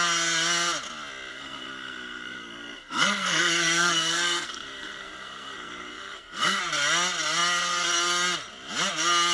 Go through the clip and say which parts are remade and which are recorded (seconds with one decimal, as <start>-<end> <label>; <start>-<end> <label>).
0.0-1.3 recorded; 1.3-6.6 remade; 6.6-9.3 recorded